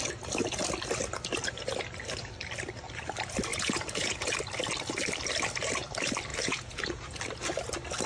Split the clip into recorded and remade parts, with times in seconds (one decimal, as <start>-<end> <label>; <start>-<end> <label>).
0.0-3.5 recorded; 3.5-4.3 remade; 4.3-6.3 recorded; 6.3-7.2 remade; 7.2-8.1 recorded